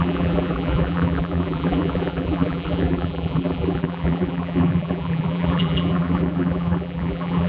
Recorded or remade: remade